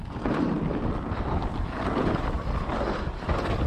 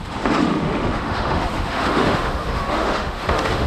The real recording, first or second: first